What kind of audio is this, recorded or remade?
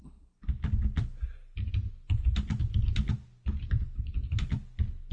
recorded